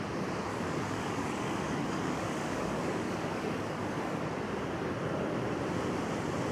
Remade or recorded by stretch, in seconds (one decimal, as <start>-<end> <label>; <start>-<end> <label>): 0.0-0.5 recorded; 0.5-4.2 remade; 4.2-6.5 recorded